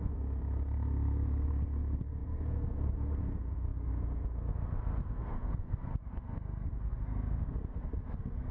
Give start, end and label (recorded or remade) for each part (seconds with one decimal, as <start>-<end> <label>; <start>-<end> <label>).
0.0-8.5 remade